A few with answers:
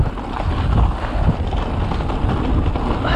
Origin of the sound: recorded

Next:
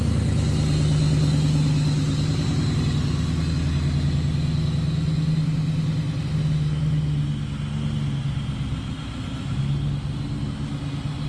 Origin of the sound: recorded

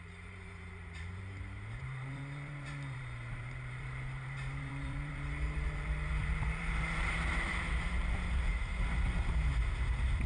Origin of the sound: remade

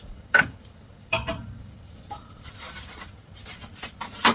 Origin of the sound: remade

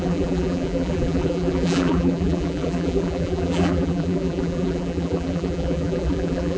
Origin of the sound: remade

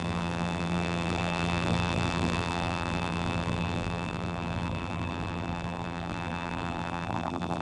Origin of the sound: remade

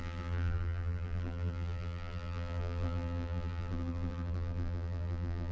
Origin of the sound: remade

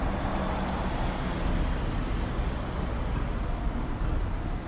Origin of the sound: recorded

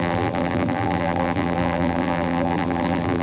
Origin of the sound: remade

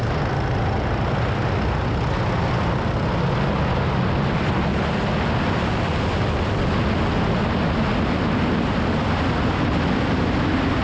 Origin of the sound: recorded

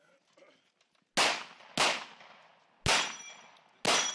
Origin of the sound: recorded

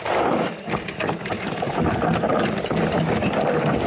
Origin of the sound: recorded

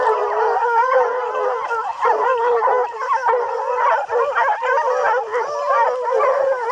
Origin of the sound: recorded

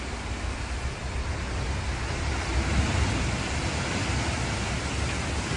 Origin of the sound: recorded